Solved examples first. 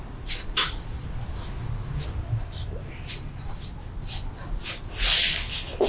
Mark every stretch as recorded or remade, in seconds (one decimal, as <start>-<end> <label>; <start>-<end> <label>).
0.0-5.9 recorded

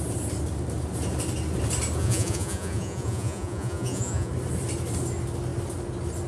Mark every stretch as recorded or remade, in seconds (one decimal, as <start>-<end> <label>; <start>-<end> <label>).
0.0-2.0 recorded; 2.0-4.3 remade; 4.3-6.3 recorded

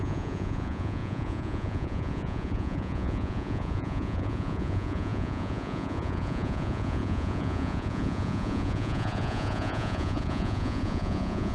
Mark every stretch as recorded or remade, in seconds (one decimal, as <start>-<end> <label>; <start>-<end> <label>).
0.0-11.5 remade

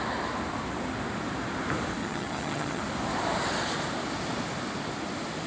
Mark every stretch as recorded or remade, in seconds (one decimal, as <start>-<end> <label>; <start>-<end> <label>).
0.0-2.0 recorded; 2.0-2.8 remade; 2.8-5.5 recorded

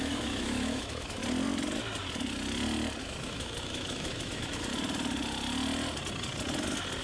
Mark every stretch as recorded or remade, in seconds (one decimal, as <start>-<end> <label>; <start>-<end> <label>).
0.0-1.2 remade; 1.2-3.0 recorded; 3.0-4.7 remade; 4.7-7.0 recorded

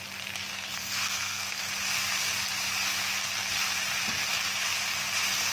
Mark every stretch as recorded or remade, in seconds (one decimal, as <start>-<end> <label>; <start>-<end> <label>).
0.0-0.5 recorded; 0.5-1.6 remade; 1.6-5.5 recorded

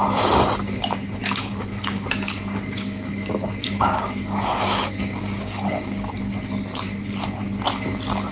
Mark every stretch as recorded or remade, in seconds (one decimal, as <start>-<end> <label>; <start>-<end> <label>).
0.0-1.2 recorded; 1.2-6.1 remade; 6.1-8.3 recorded